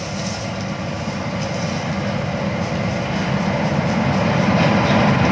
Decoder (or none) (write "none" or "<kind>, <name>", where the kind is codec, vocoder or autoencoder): none